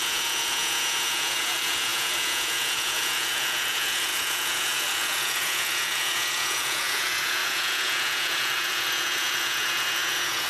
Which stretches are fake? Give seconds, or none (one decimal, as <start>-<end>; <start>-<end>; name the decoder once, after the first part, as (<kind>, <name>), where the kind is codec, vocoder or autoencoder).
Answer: 0.0-10.5 (vocoder, Vocos)